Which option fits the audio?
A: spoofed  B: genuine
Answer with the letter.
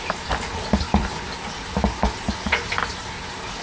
B